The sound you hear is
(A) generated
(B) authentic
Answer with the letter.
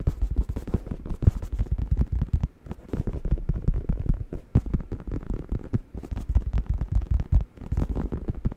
A